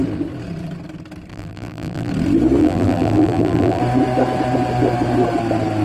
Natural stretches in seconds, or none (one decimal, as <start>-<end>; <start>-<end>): 0.0-1.3; 2.1-2.6; 3.8-5.8